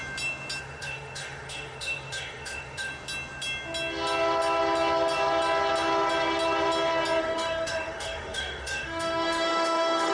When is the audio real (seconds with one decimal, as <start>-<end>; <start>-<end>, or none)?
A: 0.0-0.6; 2.9-7.2